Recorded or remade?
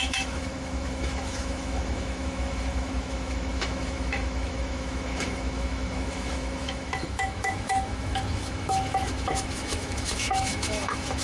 remade